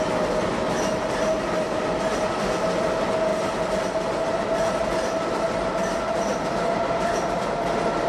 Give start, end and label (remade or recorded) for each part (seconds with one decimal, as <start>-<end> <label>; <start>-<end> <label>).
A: 0.0-8.1 recorded